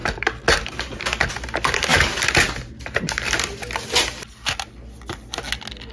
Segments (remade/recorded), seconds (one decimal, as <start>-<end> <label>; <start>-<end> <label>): 0.0-5.9 recorded